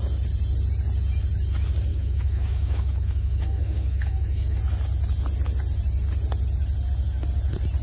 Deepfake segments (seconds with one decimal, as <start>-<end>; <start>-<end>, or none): 1.9-4.6